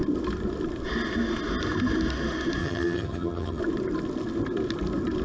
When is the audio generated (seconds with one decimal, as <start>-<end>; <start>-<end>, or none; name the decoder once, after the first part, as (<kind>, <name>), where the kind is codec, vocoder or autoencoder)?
2.6-3.6 (vocoder, HiFi-GAN)